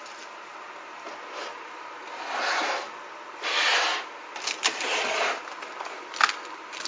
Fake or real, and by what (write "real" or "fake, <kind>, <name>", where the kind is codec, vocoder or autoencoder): real